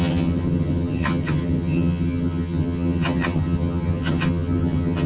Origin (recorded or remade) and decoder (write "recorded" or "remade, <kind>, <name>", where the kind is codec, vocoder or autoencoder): remade, vocoder, HiFi-GAN